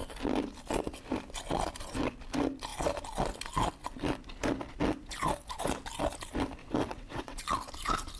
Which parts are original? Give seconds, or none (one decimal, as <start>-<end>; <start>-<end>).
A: 0.0-6.6; 7.4-8.2

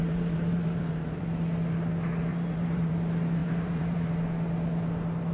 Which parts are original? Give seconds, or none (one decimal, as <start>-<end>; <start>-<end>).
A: 1.2-2.3; 2.9-3.4; 4.1-5.3

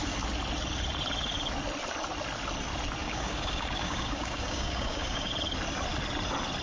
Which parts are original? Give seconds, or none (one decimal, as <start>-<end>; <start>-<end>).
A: 0.0-3.0; 5.3-6.6

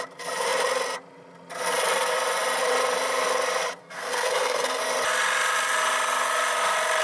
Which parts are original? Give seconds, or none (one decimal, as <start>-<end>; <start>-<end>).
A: 0.0-3.8; 4.8-7.0

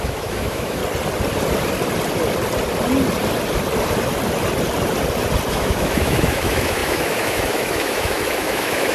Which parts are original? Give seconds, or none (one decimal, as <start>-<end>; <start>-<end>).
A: 0.8-5.5

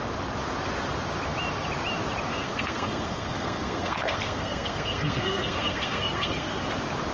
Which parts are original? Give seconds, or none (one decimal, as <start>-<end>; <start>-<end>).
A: 0.0-2.3; 6.6-7.1

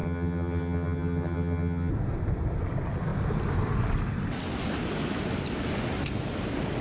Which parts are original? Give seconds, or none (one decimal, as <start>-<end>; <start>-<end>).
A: 1.9-6.8